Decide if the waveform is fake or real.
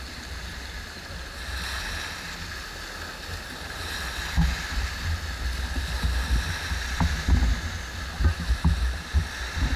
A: real